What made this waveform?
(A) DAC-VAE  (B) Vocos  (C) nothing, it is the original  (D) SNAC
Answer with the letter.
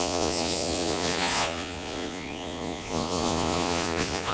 B